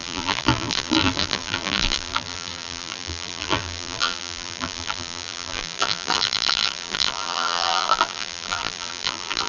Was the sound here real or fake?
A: fake